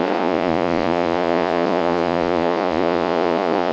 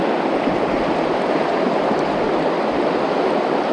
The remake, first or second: first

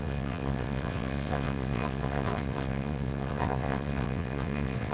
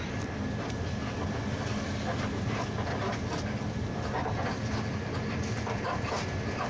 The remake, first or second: first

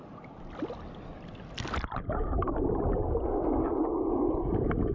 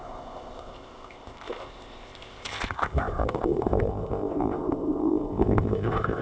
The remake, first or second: second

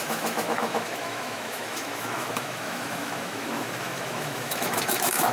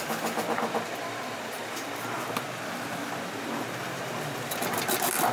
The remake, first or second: first